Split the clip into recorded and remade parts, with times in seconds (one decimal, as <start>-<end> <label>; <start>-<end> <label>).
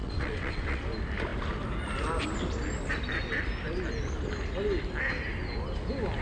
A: 0.0-0.8 remade; 0.8-6.2 recorded